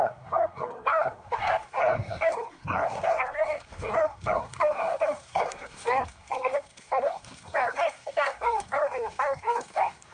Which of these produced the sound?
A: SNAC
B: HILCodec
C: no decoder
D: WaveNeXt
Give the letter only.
A